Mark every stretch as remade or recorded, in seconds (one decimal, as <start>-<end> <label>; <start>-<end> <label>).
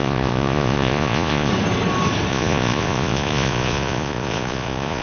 0.0-1.5 remade; 1.5-2.3 recorded; 2.3-5.0 remade